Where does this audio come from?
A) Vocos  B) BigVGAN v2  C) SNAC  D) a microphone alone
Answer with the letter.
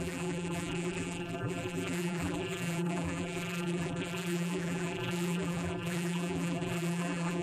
B